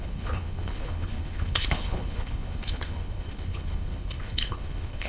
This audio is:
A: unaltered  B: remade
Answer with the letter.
B